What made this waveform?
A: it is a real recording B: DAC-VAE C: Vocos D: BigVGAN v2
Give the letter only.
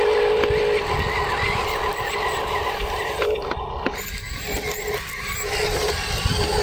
A